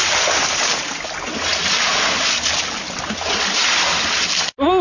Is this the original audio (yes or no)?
yes